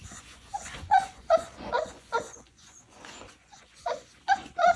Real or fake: fake